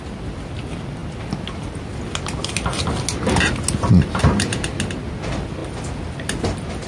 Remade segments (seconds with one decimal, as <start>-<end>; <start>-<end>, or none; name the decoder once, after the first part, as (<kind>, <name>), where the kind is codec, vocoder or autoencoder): none